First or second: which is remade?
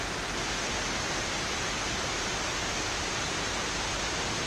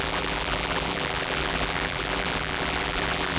second